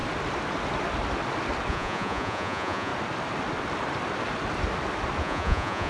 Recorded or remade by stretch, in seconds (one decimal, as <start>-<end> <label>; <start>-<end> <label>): 0.0-1.7 recorded; 1.7-2.9 remade; 2.9-5.2 recorded; 5.2-5.9 remade